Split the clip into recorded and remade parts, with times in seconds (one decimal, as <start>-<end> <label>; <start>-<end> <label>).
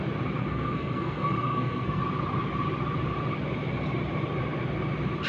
0.0-0.4 recorded; 0.4-2.0 remade; 2.0-5.3 recorded